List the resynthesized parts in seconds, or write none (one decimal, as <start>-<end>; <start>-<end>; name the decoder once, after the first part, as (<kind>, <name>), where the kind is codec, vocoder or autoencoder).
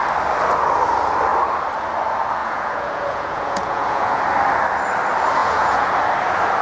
2.4-4.2 (vocoder, Vocos); 5.4-5.9